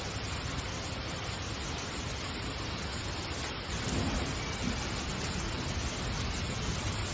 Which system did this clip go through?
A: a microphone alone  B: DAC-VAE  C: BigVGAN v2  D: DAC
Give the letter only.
A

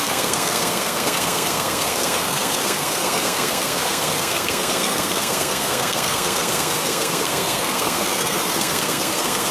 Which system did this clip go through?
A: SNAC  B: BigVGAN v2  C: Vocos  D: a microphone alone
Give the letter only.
A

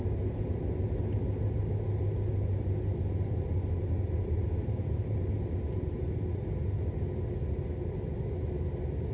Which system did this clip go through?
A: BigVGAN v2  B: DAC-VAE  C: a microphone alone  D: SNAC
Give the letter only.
C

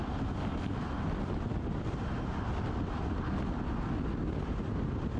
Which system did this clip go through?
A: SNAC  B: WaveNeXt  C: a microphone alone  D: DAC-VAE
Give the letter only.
C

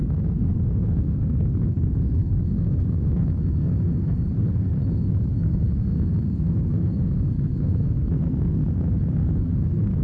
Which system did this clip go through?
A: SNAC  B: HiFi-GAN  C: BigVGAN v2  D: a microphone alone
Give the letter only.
A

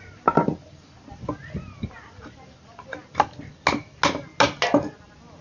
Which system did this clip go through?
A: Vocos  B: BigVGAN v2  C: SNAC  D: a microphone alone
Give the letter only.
D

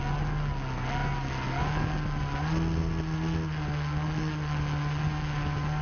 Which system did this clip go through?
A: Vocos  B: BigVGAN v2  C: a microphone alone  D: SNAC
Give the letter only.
C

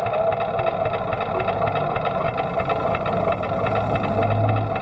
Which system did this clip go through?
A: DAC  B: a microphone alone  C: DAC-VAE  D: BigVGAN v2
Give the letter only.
B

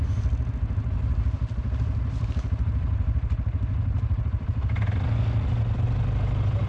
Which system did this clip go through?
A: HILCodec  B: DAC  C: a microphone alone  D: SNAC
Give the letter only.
C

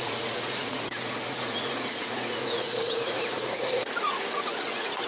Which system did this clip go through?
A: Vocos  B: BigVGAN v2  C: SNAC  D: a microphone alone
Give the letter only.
A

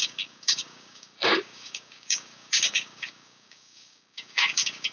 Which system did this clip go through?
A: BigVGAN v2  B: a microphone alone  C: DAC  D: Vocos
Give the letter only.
C